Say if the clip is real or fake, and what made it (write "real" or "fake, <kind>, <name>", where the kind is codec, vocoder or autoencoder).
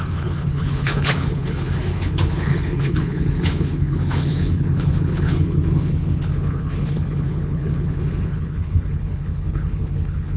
fake, codec, HILCodec